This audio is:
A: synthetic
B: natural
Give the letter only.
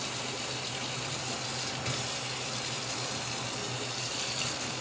B